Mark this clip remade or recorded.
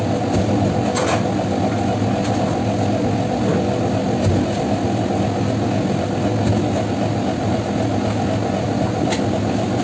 recorded